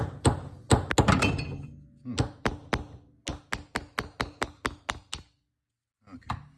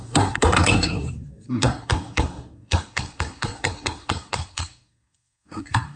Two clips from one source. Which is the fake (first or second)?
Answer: second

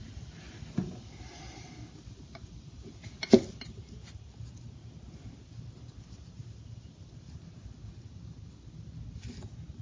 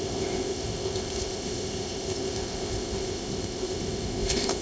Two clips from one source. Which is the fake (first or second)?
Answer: second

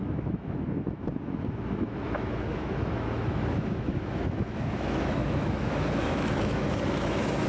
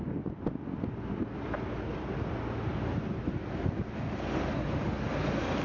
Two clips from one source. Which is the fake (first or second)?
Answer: first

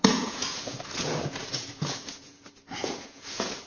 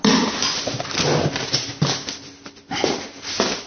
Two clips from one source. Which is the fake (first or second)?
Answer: first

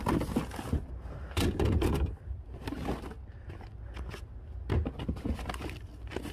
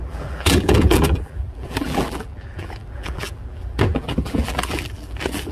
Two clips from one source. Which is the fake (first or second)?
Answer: second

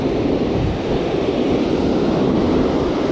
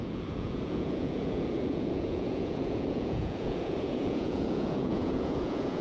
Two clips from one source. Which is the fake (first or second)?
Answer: second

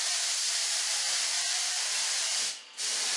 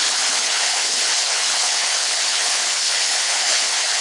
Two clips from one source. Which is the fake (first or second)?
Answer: second